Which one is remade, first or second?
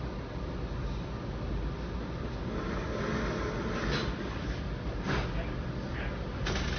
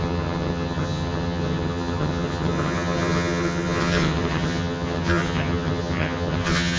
second